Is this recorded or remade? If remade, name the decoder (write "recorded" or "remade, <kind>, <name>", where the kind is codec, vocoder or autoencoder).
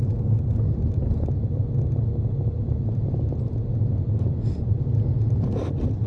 recorded